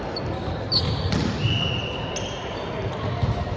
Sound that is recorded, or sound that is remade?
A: recorded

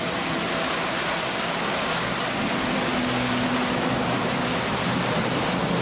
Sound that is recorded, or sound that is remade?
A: recorded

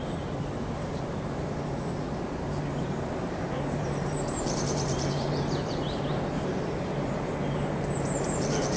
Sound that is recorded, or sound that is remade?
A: remade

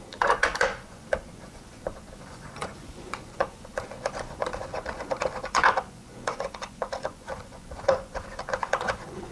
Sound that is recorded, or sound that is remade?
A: remade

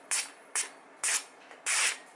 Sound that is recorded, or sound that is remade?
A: recorded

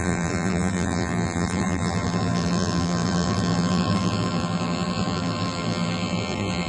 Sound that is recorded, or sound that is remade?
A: remade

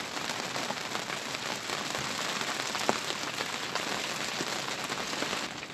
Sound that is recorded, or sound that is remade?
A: recorded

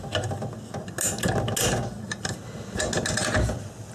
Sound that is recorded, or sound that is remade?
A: recorded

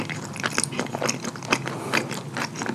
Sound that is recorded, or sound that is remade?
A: recorded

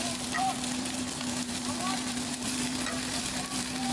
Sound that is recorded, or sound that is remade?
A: remade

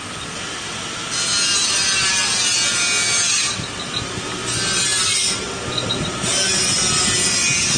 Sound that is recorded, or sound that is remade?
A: recorded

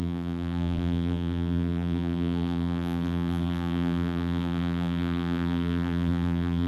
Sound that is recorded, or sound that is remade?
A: remade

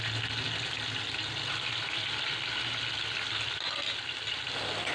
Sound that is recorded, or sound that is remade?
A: recorded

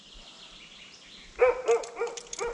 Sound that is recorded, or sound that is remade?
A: recorded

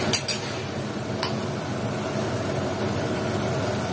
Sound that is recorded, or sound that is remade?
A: recorded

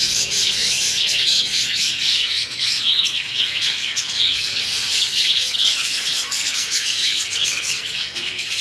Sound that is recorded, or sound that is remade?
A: remade